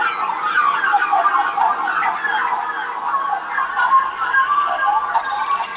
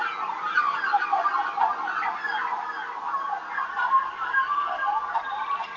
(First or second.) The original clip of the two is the first